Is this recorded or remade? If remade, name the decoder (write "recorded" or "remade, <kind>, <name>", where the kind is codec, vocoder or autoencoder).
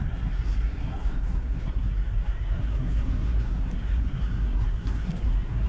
remade, codec, SNAC